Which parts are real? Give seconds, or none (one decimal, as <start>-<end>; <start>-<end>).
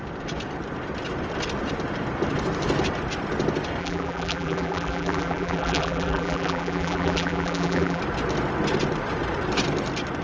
0.0-3.8; 8.0-10.2